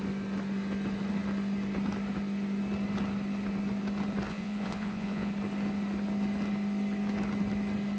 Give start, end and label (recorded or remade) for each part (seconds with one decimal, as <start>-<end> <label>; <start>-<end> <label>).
0.0-4.3 recorded; 4.3-5.3 remade; 5.3-8.0 recorded